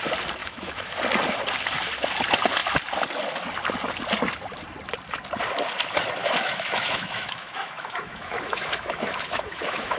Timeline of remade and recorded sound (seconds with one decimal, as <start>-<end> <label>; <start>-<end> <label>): 0.0-0.4 recorded; 0.4-1.0 remade; 1.0-6.2 recorded; 6.2-10.0 remade